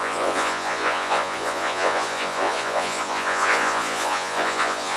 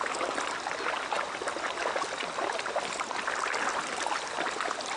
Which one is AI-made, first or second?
first